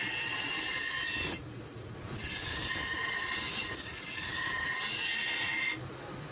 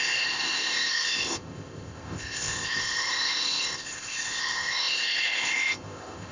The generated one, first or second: second